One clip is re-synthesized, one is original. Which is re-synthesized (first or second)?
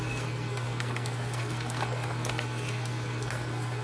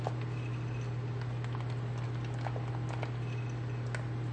first